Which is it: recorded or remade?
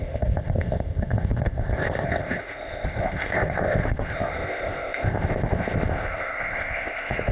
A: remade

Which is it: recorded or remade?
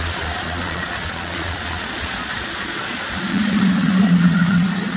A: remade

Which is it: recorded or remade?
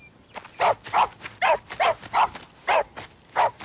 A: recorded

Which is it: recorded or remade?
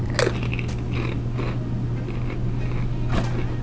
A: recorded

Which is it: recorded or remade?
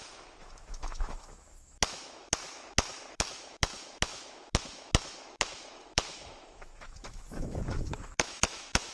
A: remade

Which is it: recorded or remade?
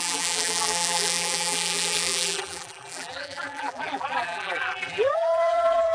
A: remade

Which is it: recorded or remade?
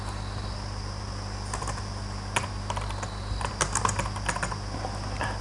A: recorded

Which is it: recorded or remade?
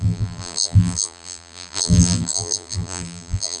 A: remade